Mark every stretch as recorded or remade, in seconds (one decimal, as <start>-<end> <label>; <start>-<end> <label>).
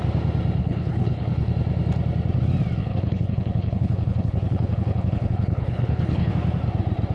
0.0-0.6 recorded; 0.6-1.5 remade; 1.5-2.8 recorded; 2.8-6.3 remade; 6.3-7.1 recorded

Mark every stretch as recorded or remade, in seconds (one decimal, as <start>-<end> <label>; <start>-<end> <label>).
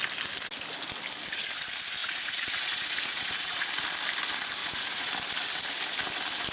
0.0-2.0 recorded; 2.0-3.6 remade; 3.6-4.6 recorded; 4.6-5.1 remade; 5.1-6.5 recorded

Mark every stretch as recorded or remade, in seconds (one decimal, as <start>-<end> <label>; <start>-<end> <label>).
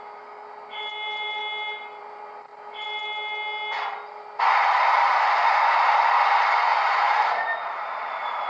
0.0-1.4 remade; 1.4-2.0 recorded; 2.0-2.5 remade; 2.5-4.2 recorded; 4.2-6.7 remade; 6.7-8.1 recorded; 8.1-8.5 remade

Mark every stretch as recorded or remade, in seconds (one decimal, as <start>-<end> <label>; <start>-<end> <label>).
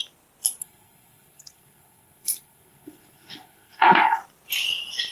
0.0-0.6 recorded; 0.6-4.2 remade; 4.2-5.1 recorded